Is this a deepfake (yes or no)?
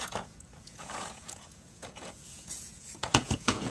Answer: yes